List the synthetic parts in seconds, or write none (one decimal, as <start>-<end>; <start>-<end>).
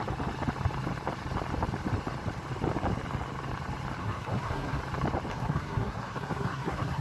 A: 4.0-4.8; 5.3-7.0